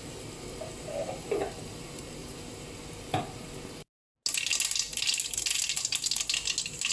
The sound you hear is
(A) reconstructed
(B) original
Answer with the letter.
B